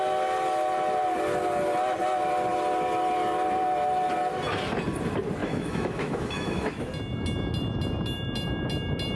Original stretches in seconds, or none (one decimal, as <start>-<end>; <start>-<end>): 0.0-5.4; 6.9-9.2